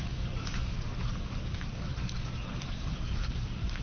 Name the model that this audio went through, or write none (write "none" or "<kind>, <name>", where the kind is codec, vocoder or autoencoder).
codec, DAC